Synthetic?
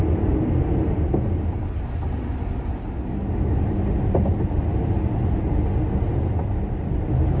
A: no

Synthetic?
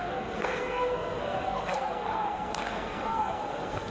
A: yes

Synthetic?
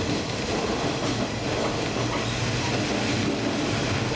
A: no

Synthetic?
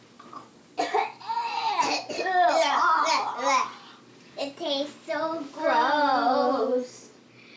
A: no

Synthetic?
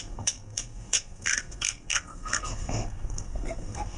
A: yes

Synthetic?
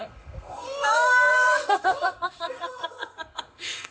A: yes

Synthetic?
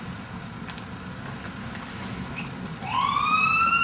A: no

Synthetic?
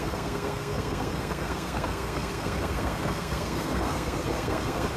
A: yes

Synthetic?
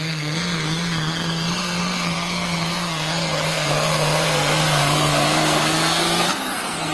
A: yes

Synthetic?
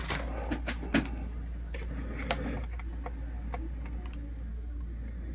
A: no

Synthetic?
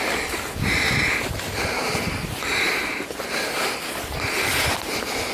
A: no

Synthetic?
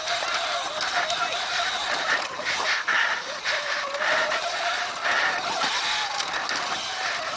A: no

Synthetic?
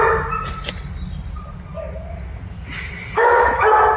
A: no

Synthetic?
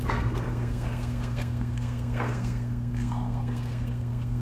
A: yes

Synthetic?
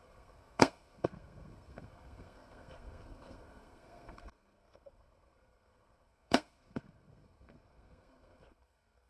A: yes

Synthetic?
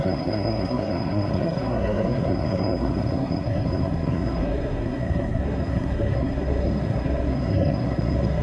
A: yes